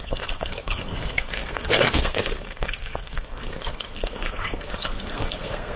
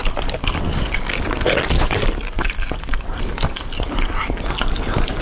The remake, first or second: first